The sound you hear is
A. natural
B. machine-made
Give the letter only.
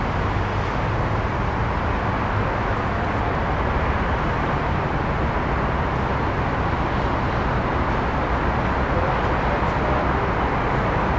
A